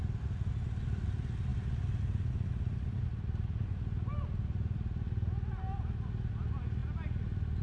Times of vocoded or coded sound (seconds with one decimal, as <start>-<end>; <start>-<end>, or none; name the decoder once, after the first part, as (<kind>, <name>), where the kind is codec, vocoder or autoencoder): none